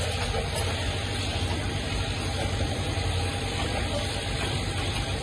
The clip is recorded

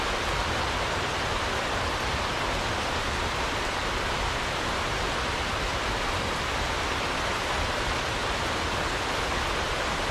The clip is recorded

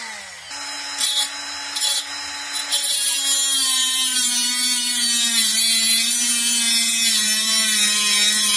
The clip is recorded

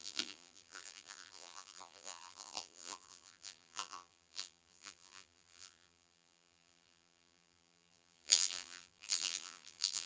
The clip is remade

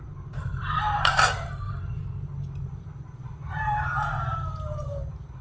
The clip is remade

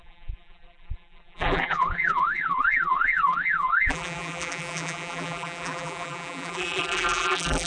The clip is remade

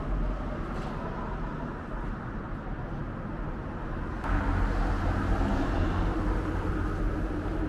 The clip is recorded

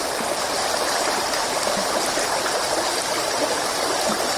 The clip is recorded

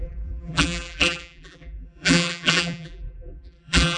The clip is remade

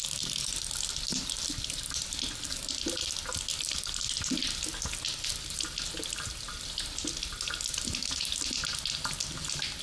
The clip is recorded